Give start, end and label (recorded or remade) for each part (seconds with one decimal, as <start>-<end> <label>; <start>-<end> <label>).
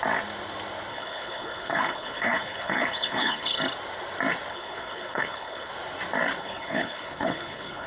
0.0-0.9 recorded; 0.9-3.6 remade; 3.6-4.5 recorded; 4.5-5.7 remade; 5.7-6.4 recorded; 6.4-7.9 remade